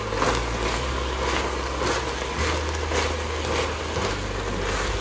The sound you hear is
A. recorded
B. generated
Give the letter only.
A